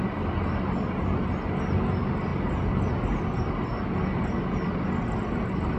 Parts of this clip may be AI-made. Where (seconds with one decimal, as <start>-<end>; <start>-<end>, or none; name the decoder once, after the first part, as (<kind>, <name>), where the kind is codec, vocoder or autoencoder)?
none